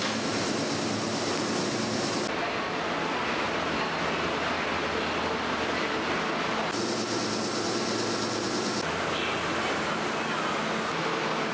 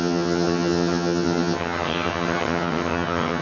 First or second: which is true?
first